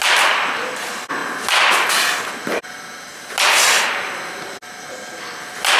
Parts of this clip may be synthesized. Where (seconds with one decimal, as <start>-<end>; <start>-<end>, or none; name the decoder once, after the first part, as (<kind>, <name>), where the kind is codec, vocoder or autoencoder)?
none